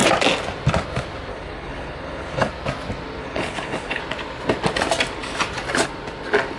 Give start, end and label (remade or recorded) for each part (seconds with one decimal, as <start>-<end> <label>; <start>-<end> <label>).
0.0-1.3 recorded; 1.3-2.5 remade; 2.5-3.2 recorded; 3.2-4.0 remade; 4.0-6.6 recorded